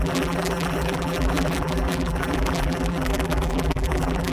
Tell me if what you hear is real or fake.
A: fake